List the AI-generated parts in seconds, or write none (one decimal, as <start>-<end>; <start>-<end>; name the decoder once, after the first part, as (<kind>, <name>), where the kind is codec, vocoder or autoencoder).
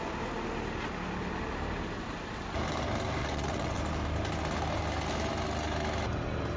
3.2-3.8 (vocoder, WaveNeXt)